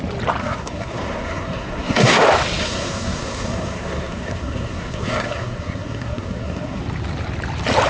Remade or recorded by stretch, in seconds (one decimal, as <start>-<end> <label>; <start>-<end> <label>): 0.0-0.4 recorded; 0.4-2.2 remade; 2.2-2.6 recorded; 2.6-6.8 remade; 6.8-7.9 recorded